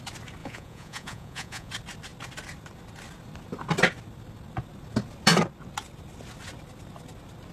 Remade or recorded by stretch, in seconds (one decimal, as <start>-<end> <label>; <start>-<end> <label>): 0.0-0.4 recorded; 0.4-1.7 remade; 1.7-7.5 recorded